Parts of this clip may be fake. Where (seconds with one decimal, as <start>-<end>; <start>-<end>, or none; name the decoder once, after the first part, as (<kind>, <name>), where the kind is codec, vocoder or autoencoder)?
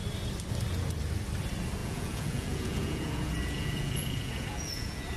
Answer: 1.8-5.2 (vocoder, Vocos)